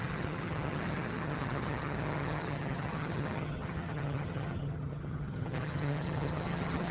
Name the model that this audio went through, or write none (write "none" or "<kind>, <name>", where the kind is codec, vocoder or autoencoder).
vocoder, HiFi-GAN